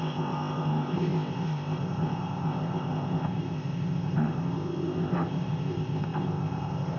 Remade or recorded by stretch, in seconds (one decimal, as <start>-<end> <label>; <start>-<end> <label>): 0.0-7.0 remade